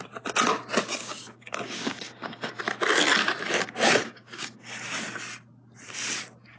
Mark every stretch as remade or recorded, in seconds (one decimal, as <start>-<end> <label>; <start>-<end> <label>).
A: 0.0-1.0 recorded; 1.0-2.5 remade; 2.5-4.0 recorded; 4.0-4.8 remade; 4.8-6.6 recorded

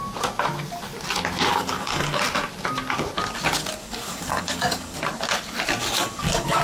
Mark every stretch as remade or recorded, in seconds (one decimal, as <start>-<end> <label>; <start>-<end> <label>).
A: 0.0-1.5 recorded; 1.5-2.2 remade; 2.2-3.8 recorded; 3.8-5.0 remade; 5.0-5.8 recorded; 5.8-6.6 remade

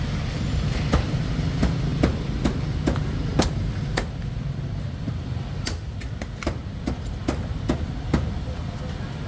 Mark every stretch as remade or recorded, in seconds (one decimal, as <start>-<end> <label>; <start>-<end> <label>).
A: 0.0-9.3 recorded

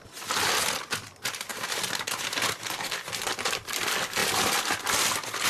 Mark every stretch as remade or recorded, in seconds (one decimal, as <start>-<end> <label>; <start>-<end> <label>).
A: 0.0-5.5 recorded